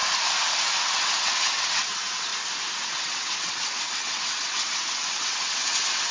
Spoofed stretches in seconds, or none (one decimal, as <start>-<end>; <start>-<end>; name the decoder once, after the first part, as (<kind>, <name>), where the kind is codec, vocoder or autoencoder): 0.6-2.3 (vocoder, WaveNeXt); 2.9-6.1